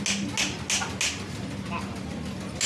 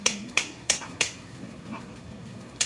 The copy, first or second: second